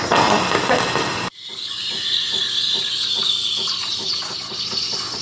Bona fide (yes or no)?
yes